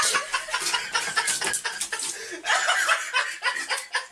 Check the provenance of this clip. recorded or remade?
recorded